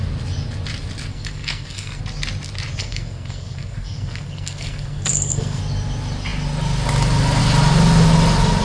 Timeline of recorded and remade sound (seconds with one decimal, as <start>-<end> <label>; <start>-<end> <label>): 0.0-1.1 recorded; 1.1-2.0 remade; 2.0-2.8 recorded; 2.8-5.6 remade; 5.6-8.6 recorded